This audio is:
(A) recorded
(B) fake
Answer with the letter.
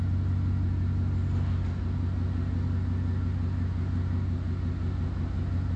A